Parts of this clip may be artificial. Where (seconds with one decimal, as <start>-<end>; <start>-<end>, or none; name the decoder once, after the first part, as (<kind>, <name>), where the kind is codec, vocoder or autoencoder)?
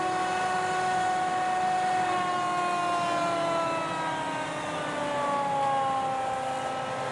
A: none